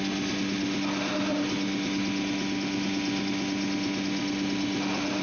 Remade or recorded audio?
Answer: recorded